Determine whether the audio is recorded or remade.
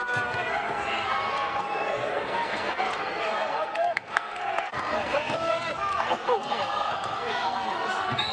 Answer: remade